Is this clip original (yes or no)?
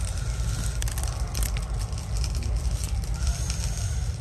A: yes